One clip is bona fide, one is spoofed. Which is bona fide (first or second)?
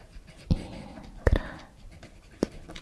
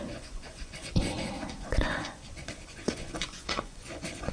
first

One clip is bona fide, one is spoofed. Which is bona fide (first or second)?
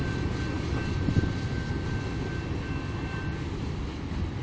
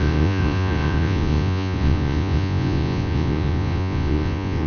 first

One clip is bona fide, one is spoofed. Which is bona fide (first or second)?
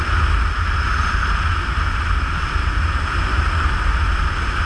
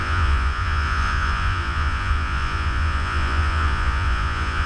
first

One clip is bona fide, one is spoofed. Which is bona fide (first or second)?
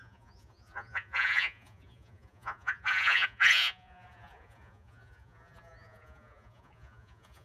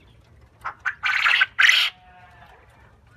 second